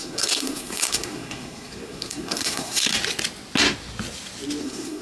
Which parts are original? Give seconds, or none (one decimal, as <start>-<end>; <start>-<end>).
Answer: 2.9-4.6